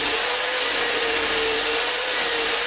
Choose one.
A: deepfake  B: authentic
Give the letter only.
B